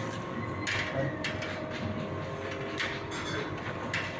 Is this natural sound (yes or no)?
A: yes